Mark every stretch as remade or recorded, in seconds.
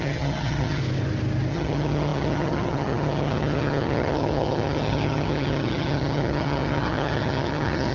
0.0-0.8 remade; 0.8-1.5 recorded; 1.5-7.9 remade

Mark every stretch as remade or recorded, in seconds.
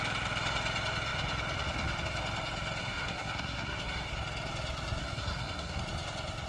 0.0-2.8 recorded; 2.8-4.1 remade; 4.1-5.0 recorded; 5.0-5.8 remade; 5.8-6.5 recorded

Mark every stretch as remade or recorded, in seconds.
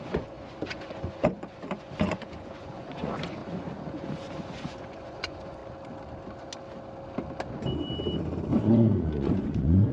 0.0-5.6 remade; 5.6-8.6 recorded; 8.6-9.9 remade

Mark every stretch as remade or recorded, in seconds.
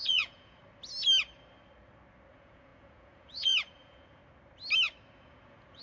0.0-0.6 remade; 0.6-2.3 recorded; 2.3-4.2 remade; 4.2-5.2 recorded; 5.2-5.8 remade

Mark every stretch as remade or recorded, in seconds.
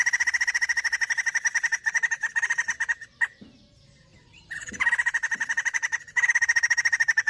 0.0-1.5 recorded; 1.5-3.3 remade; 3.3-4.1 recorded; 4.1-7.3 remade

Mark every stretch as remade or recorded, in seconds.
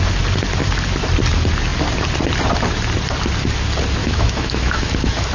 0.0-4.0 recorded; 4.0-5.3 remade